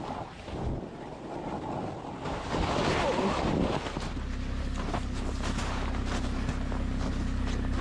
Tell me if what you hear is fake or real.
real